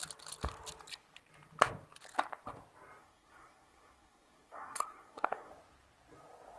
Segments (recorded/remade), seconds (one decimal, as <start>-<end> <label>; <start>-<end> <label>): 0.0-3.0 recorded; 3.0-5.5 remade; 5.5-6.6 recorded